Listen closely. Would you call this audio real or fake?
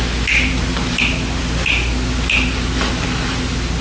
real